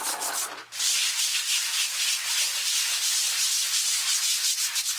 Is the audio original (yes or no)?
yes